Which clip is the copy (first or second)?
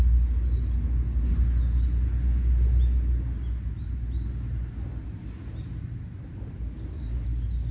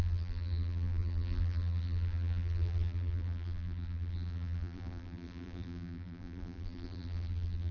second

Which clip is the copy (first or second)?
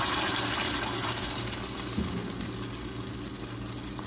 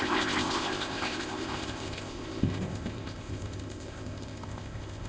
second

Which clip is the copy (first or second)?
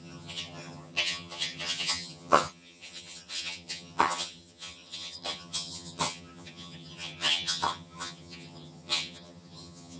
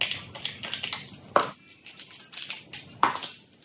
first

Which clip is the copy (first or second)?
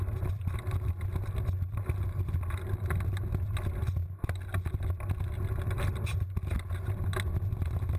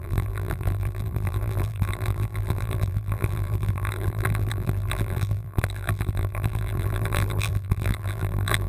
second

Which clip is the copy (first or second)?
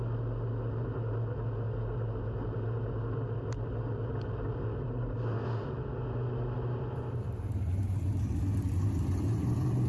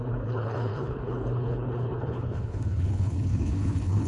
second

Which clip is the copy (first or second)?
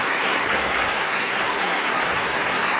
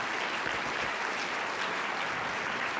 first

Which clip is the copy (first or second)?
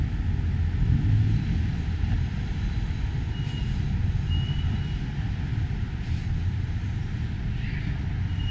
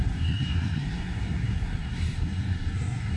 second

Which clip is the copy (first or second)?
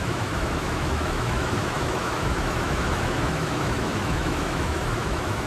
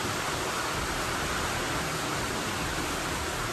first